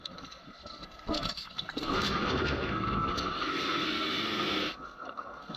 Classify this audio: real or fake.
fake